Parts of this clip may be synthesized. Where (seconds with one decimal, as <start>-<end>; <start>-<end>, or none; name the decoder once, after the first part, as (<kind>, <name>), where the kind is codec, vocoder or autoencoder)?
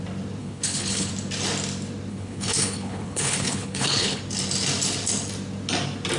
0.4-1.1 (codec, HILCodec); 2.1-4.2